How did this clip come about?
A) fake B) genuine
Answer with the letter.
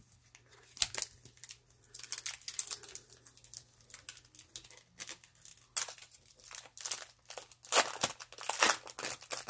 B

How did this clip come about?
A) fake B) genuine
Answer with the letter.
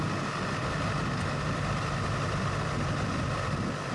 B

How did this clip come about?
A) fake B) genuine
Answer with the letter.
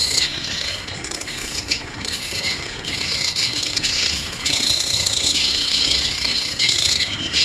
A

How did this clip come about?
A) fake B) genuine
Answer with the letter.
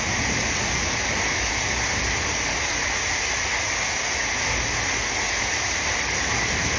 B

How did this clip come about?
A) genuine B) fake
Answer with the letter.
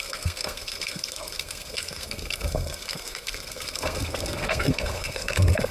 B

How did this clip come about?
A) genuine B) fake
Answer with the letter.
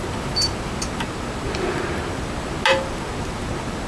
A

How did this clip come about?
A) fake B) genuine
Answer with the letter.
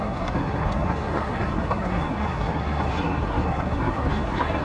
A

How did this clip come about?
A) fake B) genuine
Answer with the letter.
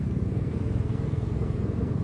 A